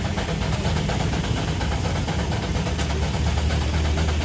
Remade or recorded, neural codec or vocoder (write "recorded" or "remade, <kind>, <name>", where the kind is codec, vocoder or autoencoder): recorded